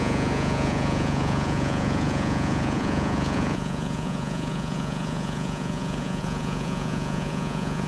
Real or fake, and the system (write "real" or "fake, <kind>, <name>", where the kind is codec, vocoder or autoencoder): fake, vocoder, Vocos